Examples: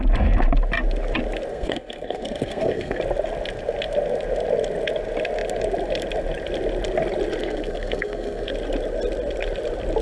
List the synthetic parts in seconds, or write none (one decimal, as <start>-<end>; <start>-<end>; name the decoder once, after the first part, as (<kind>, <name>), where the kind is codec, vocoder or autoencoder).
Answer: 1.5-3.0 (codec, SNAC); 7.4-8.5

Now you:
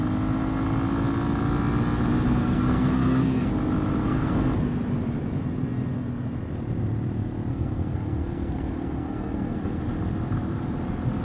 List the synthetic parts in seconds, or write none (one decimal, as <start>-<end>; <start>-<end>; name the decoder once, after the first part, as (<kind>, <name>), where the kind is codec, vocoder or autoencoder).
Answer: 2.4-3.5 (codec, SNAC); 4.0-4.5; 7.5-9.8

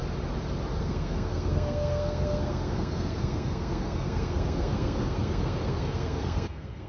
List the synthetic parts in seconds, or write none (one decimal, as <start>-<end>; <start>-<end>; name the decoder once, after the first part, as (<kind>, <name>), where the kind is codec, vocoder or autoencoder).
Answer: 0.8-6.9 (codec, SNAC)